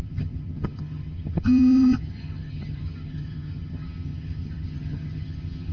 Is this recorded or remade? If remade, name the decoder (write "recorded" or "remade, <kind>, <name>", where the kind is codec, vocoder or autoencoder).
remade, vocoder, HiFi-GAN